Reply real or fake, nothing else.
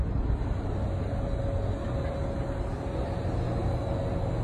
real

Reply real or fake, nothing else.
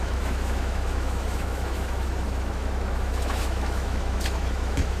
fake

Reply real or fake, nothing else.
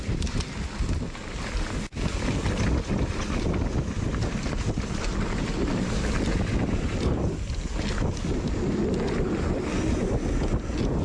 real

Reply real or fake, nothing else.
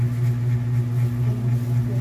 real